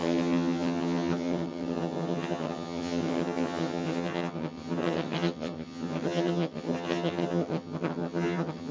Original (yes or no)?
no